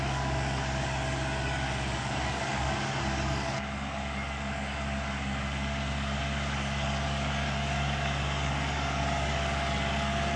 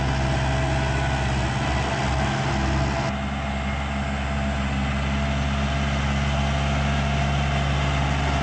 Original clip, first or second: second